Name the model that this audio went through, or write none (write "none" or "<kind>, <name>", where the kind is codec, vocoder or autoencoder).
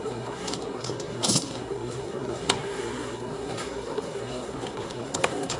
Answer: codec, SNAC